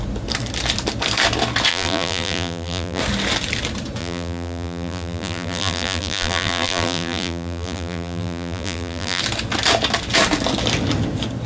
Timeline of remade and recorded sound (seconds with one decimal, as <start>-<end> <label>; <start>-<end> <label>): 0.0-1.7 recorded; 1.7-3.0 remade; 3.0-4.0 recorded; 4.0-9.2 remade; 9.2-11.5 recorded